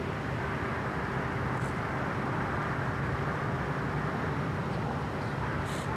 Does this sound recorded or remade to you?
recorded